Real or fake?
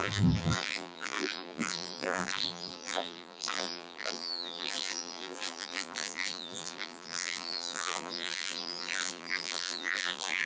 fake